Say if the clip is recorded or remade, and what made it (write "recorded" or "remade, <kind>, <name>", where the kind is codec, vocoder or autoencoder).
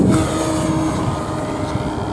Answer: recorded